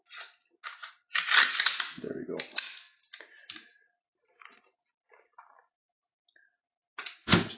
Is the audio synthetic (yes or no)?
no